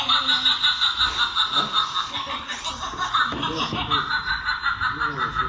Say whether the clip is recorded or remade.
recorded